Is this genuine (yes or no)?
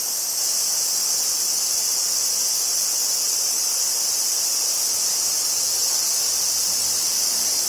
yes